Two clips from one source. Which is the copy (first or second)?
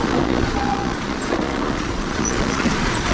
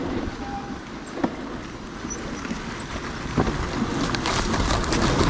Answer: first